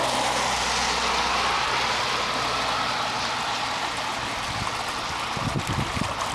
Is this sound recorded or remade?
recorded